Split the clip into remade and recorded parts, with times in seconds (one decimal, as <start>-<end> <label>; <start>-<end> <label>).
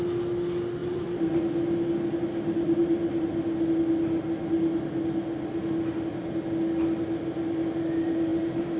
0.0-0.8 recorded; 0.8-1.4 remade; 1.4-8.8 recorded